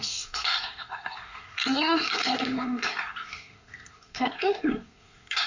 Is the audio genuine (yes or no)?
no